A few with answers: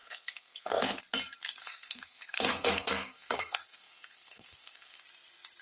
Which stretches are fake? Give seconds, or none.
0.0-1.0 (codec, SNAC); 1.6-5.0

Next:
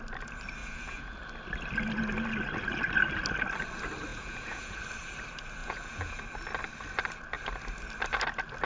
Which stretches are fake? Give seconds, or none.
0.6-1.2 (vocoder, Vocos); 4.1-4.8; 5.6-6.2

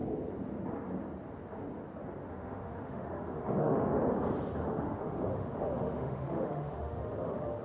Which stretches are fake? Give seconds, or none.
2.3-3.9 (autoencoder, DAC-VAE); 4.6-7.6

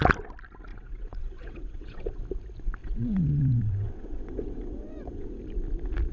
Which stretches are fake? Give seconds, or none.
0.7-2.2 (vocoder, WaveNeXt); 2.8-5.4

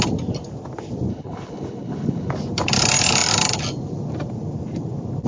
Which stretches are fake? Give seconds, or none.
1.1-2.3 (codec, HILCodec)

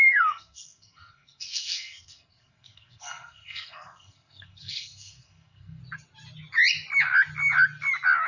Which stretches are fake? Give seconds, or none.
0.0-5.8 (codec, SNAC)

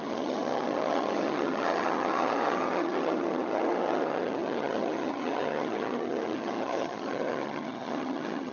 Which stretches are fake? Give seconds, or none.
0.0-8.5 (vocoder, HiFi-GAN)

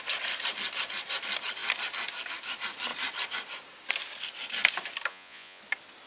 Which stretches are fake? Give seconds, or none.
5.1-5.6 (vocoder, Vocos)